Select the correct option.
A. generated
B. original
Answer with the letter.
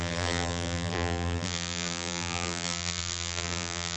A